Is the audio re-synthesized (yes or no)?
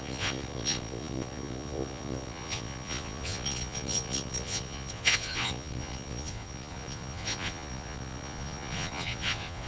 yes